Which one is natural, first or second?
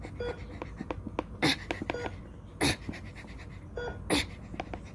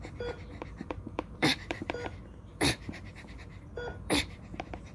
first